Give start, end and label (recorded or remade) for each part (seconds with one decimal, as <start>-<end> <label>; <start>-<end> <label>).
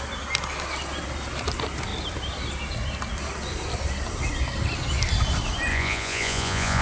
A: 0.0-5.7 recorded; 5.7-6.8 remade